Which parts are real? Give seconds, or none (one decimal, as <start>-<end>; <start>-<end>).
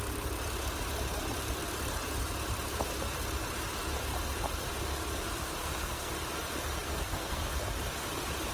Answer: 0.0-5.6; 6.1-6.8; 7.4-8.5